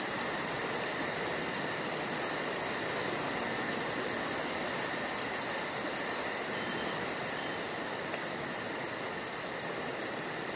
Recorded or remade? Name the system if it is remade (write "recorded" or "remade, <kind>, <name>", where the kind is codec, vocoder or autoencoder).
remade, vocoder, BigVGAN v2